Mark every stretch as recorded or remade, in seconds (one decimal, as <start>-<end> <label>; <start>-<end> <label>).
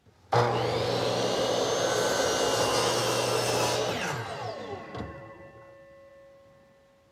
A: 0.0-7.1 recorded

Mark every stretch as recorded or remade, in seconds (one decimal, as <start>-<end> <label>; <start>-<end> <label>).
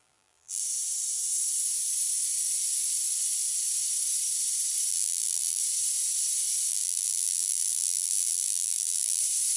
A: 0.0-0.6 remade; 0.6-4.9 recorded; 4.9-5.6 remade; 5.6-6.7 recorded; 6.7-9.2 remade; 9.2-9.6 recorded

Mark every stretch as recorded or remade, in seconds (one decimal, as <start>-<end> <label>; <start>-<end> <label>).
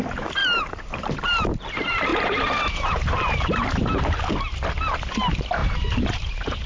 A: 0.0-0.4 recorded; 0.4-1.7 remade; 1.7-2.1 recorded; 2.1-4.3 remade; 4.3-5.6 recorded; 5.6-6.2 remade; 6.2-6.7 recorded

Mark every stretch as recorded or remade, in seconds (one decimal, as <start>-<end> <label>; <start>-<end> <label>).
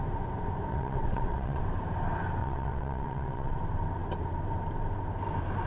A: 0.0-0.7 recorded; 0.7-1.6 remade; 1.6-2.4 recorded; 2.4-3.6 remade; 3.6-5.7 recorded